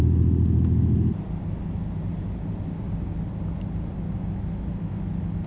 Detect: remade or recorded recorded